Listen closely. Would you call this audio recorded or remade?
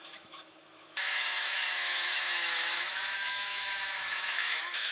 remade